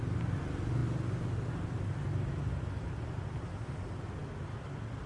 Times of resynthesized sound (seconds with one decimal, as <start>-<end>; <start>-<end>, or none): none